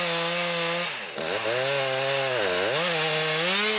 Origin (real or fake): real